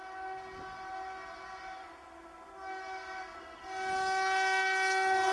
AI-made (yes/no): no